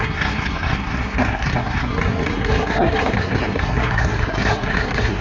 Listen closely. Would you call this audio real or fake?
fake